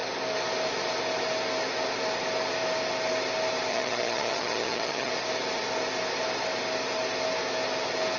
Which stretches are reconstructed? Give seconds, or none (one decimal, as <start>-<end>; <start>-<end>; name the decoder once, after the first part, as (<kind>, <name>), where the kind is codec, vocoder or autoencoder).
3.7-5.1 (vocoder, HiFi-GAN)

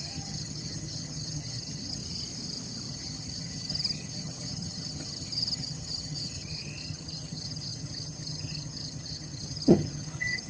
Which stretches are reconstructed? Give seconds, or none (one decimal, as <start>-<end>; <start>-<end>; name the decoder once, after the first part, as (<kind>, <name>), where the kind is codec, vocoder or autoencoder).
0.0-2.0 (vocoder, HiFi-GAN); 2.9-10.5

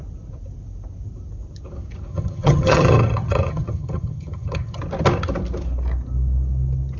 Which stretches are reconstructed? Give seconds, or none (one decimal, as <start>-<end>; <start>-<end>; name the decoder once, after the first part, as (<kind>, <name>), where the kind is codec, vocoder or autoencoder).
2.1-4.8 (vocoder, HiFi-GAN)